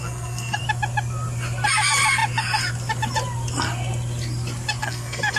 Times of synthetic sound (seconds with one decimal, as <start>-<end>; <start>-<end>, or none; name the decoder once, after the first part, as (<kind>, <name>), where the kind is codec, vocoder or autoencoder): 0.0-0.6 (codec, SNAC); 4.8-5.4

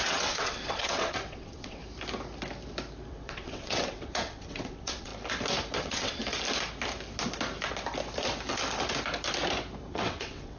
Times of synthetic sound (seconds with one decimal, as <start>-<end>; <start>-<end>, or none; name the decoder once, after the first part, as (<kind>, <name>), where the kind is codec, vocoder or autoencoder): 0.0-1.8 (vocoder, WaveNeXt); 3.1-5.1; 5.8-6.2; 9.9-10.6